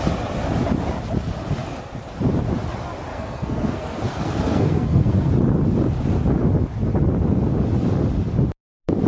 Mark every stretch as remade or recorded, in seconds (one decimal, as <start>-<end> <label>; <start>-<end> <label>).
0.0-3.1 recorded; 3.1-5.3 remade; 5.3-9.1 recorded